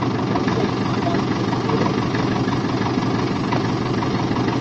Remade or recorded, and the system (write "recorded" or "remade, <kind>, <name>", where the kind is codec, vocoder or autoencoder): recorded